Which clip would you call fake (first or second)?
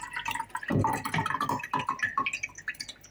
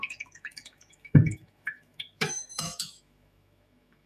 second